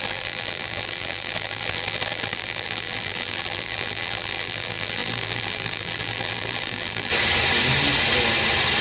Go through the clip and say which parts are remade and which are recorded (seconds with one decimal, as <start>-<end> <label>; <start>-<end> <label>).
0.0-7.1 remade; 7.1-8.8 recorded